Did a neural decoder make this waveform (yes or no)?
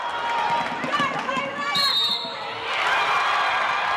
no